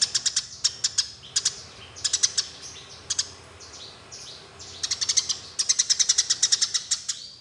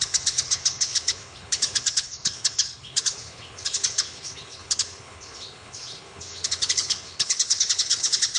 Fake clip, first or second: second